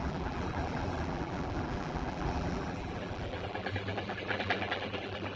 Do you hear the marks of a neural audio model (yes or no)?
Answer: yes